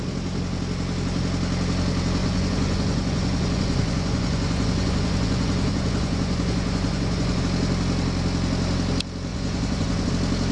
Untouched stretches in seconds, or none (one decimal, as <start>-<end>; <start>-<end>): 0.0-2.2; 7.4-9.3; 10.1-10.5